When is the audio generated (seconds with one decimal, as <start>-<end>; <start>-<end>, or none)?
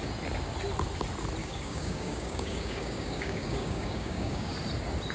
1.4-4.5